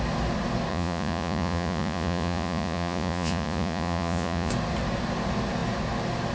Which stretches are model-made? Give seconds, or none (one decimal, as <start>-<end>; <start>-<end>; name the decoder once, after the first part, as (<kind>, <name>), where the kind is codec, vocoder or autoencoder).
0.7-4.5 (vocoder, Vocos)